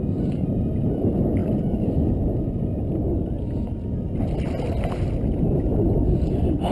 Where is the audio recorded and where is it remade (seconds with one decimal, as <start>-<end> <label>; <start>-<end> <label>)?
0.0-6.7 recorded